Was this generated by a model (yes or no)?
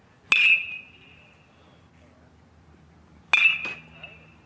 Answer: no